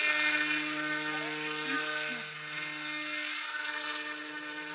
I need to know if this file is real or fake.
real